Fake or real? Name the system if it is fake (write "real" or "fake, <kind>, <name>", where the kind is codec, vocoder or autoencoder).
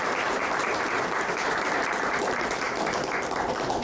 fake, vocoder, BigVGAN v2